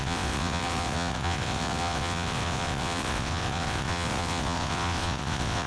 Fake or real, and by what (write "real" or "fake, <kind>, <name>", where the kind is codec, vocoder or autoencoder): fake, vocoder, WaveNeXt